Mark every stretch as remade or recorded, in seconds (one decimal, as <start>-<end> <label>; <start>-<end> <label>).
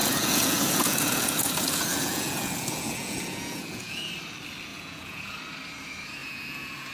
0.0-4.1 remade; 4.1-4.7 recorded; 4.7-5.3 remade; 5.3-6.2 recorded; 6.2-6.9 remade